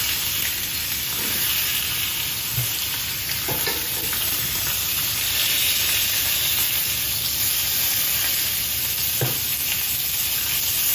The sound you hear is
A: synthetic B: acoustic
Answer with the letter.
B